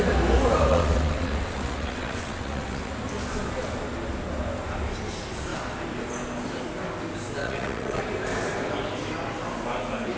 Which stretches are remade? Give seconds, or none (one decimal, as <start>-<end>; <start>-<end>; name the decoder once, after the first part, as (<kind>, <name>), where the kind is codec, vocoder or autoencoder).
0.7-2.9 (vocoder, WaveNeXt); 7.4-8.0